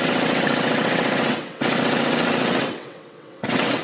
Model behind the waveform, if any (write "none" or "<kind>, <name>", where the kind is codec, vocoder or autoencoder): vocoder, WaveNeXt